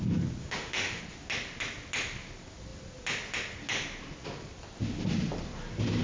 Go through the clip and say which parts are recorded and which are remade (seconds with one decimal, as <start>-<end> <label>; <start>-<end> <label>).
0.0-0.4 recorded; 0.4-1.0 remade; 1.0-6.0 recorded